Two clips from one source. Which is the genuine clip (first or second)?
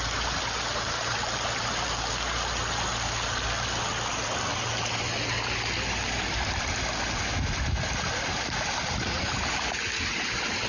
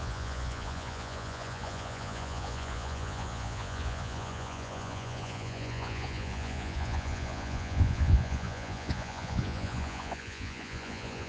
first